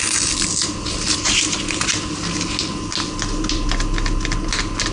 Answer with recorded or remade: recorded